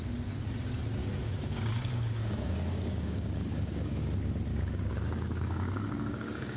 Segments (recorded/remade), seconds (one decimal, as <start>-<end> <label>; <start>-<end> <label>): 0.0-1.0 recorded; 1.0-4.0 remade; 4.0-4.5 recorded; 4.5-6.6 remade